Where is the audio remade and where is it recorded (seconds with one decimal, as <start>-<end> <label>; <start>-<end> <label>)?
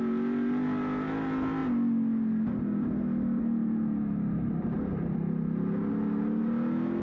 0.0-7.0 recorded